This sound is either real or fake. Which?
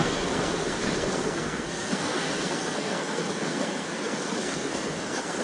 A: fake